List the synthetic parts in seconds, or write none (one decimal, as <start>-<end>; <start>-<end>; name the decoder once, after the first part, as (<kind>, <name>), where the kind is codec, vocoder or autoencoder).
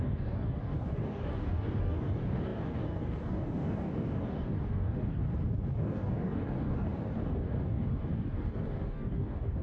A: 0.0-5.2 (codec, DAC); 5.7-9.6